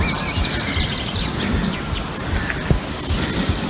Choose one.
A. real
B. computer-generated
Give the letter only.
B